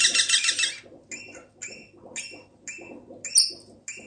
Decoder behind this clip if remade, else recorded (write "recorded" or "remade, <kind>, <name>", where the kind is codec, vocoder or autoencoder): recorded